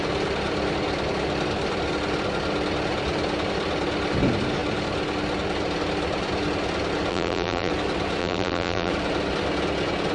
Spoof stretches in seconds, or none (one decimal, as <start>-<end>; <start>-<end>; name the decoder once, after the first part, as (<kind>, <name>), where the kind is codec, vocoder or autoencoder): 7.1-7.7 (vocoder, BigVGAN v2); 8.2-8.9